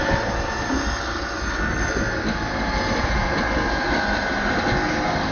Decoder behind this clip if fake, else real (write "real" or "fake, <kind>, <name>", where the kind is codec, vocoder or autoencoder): real